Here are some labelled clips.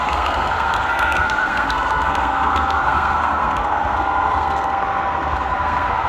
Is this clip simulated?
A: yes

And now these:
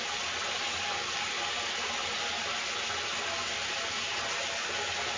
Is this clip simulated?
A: no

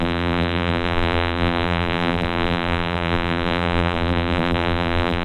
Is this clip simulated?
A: yes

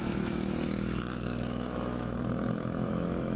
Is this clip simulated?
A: yes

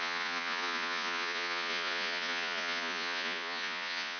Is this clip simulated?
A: yes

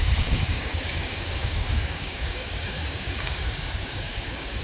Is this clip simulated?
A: yes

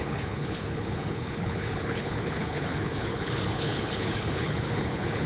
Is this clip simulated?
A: yes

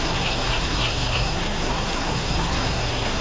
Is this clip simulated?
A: yes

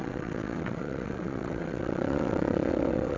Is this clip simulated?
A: yes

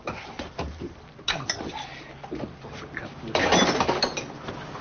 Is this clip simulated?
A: no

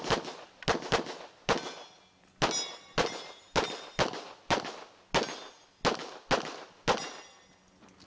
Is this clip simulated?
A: no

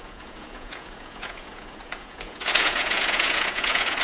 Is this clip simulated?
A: yes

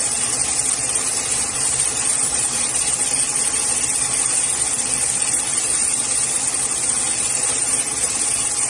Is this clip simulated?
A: no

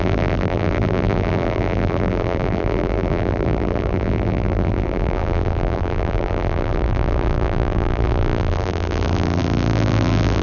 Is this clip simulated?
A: yes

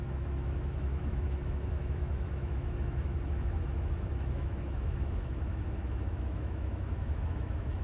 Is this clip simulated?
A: yes